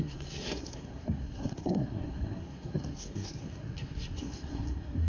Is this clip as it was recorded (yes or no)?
no